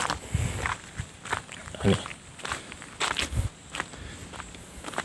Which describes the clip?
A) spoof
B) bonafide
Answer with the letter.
B